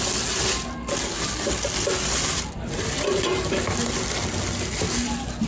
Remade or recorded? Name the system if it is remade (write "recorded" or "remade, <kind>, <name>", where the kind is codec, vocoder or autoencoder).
recorded